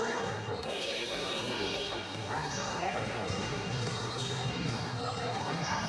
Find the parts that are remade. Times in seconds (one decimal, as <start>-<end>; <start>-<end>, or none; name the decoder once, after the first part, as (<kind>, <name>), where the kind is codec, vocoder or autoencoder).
0.0-5.9 (codec, SNAC)